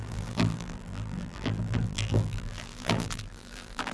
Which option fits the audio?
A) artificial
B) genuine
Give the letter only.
A